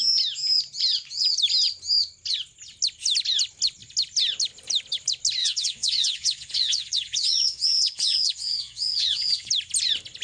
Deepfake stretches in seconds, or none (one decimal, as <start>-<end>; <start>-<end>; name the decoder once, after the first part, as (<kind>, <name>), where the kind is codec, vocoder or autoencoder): 5.4-9.5 (vocoder, Vocos)